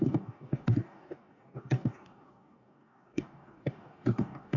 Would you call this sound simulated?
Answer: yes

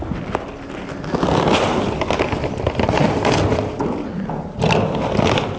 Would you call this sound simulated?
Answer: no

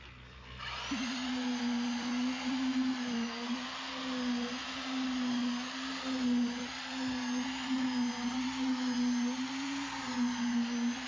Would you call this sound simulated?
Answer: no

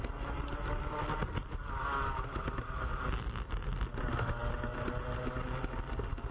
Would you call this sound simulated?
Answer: no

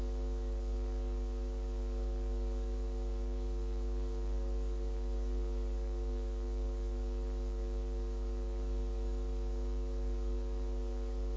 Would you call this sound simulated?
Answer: yes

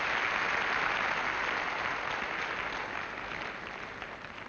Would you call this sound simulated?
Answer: no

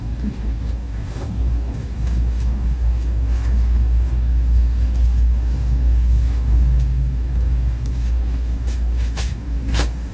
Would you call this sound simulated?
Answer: yes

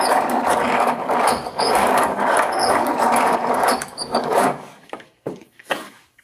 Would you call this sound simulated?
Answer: yes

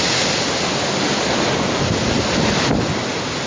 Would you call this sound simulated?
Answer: no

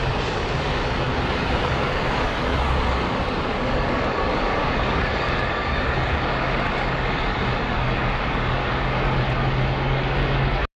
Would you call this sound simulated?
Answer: yes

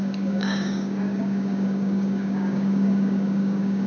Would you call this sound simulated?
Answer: yes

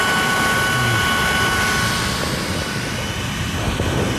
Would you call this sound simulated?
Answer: no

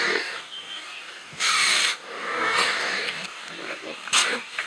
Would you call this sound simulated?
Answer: yes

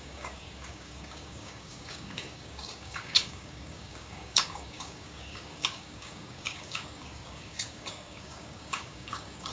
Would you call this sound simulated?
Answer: yes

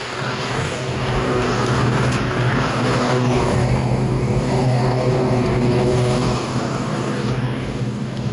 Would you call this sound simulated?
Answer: yes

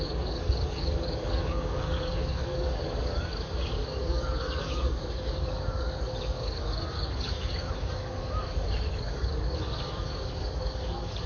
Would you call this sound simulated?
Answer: yes